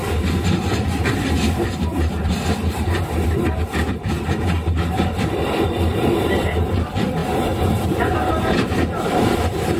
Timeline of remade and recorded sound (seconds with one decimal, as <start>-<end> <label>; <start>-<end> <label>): 0.0-1.0 recorded; 1.0-9.8 remade